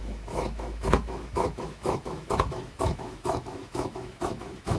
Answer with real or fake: fake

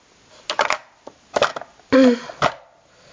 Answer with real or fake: real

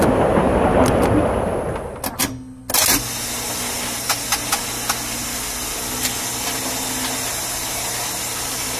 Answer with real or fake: real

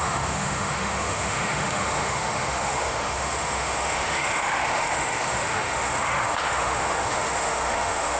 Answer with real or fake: fake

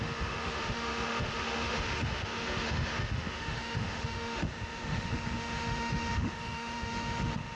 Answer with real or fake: fake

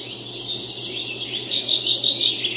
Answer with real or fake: real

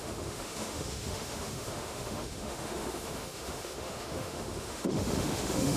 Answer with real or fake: fake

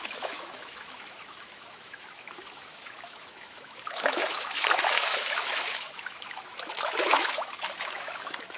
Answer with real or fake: fake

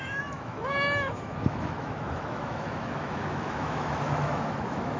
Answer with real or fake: fake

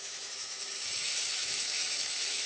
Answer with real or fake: fake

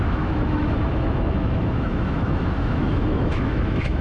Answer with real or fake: fake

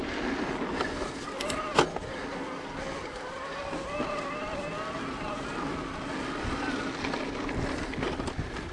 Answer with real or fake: real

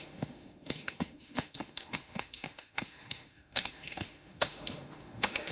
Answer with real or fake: fake